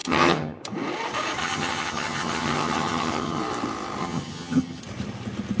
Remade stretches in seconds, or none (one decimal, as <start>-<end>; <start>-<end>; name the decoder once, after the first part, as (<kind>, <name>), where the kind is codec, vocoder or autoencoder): 0.0-0.6 (vocoder, HiFi-GAN); 1.4-3.4; 4.0-4.8